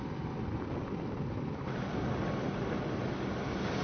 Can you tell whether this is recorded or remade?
recorded